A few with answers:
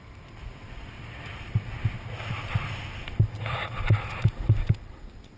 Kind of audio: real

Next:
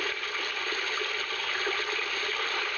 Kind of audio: real